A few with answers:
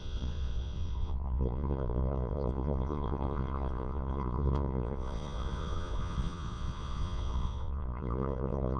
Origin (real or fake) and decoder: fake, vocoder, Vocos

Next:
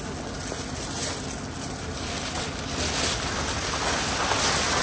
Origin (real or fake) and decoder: real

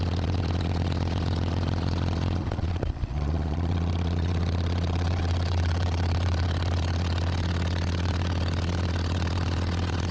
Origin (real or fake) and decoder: fake, vocoder, Vocos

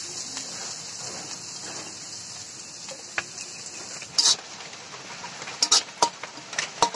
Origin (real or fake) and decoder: real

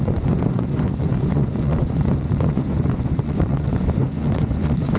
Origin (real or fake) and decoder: fake, vocoder, Vocos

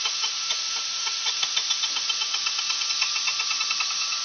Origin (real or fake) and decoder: fake, vocoder, Vocos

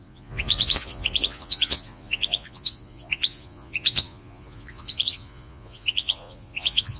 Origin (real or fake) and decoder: fake, vocoder, Vocos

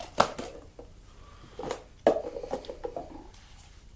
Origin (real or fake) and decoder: real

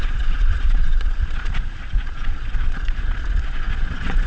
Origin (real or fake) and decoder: fake, vocoder, Vocos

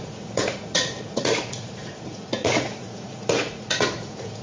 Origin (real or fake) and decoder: fake, vocoder, Vocos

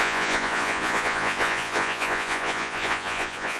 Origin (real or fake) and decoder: fake, vocoder, Vocos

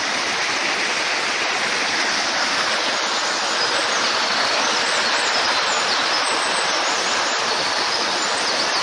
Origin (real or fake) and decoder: real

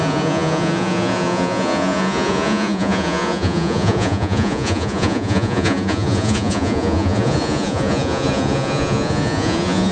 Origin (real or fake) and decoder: fake, vocoder, Vocos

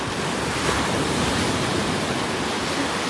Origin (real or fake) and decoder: real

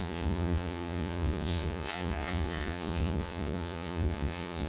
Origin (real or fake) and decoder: fake, vocoder, Vocos